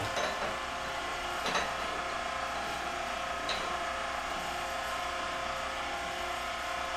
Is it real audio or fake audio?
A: real